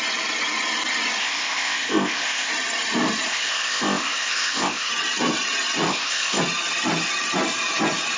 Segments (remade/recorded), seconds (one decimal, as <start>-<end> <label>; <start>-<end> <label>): 0.0-1.2 recorded; 1.2-2.5 remade; 2.5-3.3 recorded; 3.3-4.9 remade; 4.9-5.9 recorded; 5.9-6.4 remade; 6.4-8.2 recorded